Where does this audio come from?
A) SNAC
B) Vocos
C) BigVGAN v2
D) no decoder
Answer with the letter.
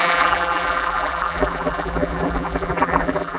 C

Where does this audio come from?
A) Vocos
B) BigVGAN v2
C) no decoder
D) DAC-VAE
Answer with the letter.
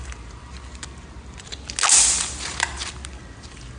C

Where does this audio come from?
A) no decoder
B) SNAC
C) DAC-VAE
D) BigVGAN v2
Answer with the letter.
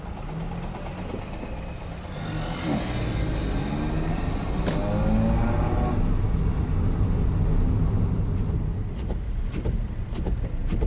A